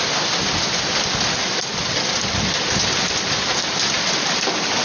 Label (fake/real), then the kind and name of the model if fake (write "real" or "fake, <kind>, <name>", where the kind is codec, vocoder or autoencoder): real